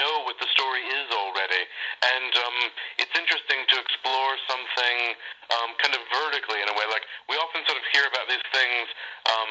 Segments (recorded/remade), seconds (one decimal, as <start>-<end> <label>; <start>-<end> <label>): 0.0-4.1 remade; 4.1-6.4 recorded; 6.4-9.5 remade